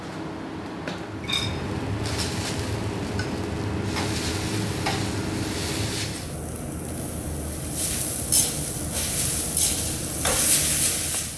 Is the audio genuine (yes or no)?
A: yes